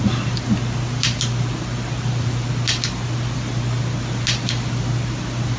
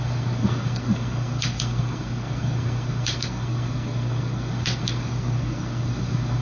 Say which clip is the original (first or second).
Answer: first